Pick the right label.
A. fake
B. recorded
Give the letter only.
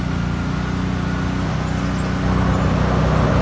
B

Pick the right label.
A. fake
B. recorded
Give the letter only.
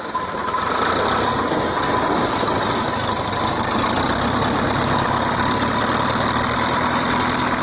B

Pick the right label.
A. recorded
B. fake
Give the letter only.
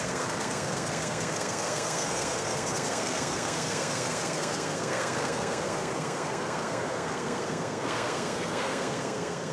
B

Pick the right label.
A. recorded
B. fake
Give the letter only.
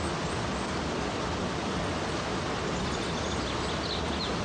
A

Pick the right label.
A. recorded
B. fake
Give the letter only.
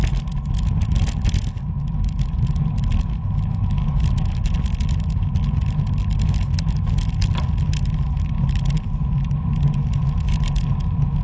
A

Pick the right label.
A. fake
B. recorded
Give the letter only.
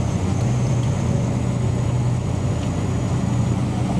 A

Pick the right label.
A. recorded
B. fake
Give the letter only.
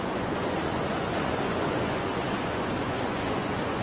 B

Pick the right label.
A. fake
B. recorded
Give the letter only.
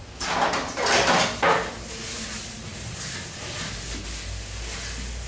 B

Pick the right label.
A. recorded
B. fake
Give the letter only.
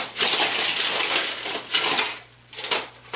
A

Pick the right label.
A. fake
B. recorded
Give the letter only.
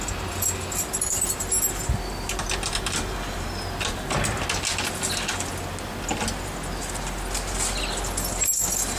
B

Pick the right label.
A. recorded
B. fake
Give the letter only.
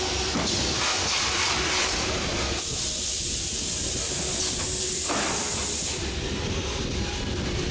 A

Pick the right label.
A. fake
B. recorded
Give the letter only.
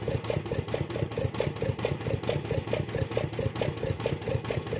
B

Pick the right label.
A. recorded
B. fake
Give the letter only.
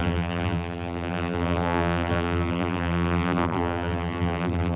B